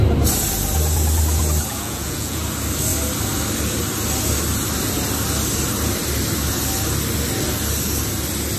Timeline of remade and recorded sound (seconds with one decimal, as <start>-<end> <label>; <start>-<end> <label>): 0.0-1.7 recorded; 1.7-2.4 remade; 2.4-8.6 recorded